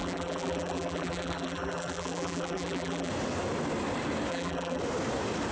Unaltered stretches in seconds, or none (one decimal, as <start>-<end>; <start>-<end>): 3.1-4.3; 4.8-5.5